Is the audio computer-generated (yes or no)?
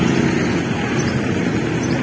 no